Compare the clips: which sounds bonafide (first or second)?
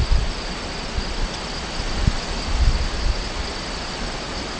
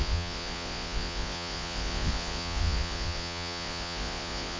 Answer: first